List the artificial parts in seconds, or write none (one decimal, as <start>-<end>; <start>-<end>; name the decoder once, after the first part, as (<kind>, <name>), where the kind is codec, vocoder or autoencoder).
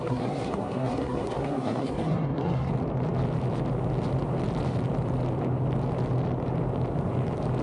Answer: 0.0-2.7 (codec, SNAC)